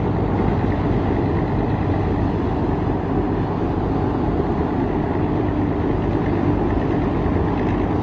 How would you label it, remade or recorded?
recorded